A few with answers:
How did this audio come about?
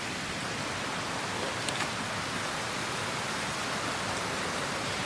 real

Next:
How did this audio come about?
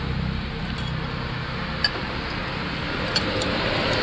real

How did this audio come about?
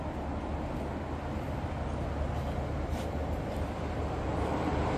real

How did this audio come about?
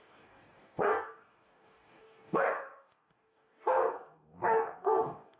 fake